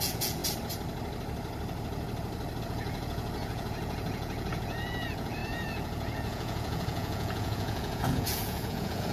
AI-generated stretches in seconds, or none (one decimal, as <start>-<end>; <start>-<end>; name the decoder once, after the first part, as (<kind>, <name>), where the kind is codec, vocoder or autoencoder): 0.0-0.4 (vocoder, Vocos); 2.6-9.1